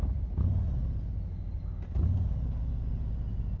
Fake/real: real